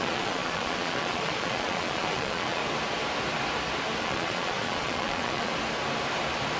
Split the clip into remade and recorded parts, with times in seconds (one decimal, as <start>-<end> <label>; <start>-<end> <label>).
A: 0.0-2.6 remade; 2.6-4.0 recorded; 4.0-5.5 remade; 5.5-6.6 recorded